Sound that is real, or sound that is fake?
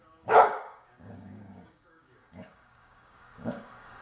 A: fake